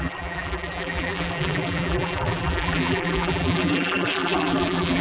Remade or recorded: remade